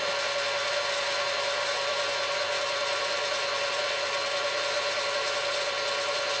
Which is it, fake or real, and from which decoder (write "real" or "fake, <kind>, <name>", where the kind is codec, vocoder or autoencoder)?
real